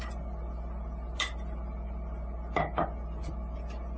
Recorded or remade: recorded